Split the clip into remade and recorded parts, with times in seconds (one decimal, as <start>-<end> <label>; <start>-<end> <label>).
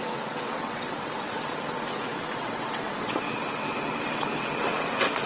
0.0-5.3 remade